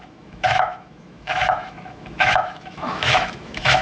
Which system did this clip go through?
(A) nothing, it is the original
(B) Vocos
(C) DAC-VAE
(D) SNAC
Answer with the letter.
C